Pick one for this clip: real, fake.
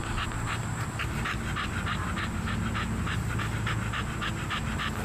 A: real